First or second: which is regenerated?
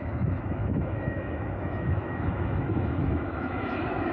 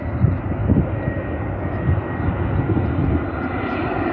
first